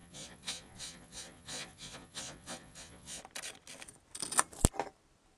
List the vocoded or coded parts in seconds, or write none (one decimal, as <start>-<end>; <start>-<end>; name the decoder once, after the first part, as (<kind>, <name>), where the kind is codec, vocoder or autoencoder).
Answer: 0.0-3.2 (vocoder, Vocos)